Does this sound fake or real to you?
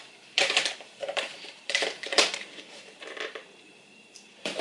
fake